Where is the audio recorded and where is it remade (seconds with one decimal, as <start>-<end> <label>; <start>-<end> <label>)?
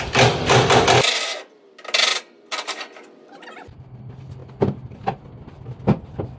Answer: 0.0-6.4 recorded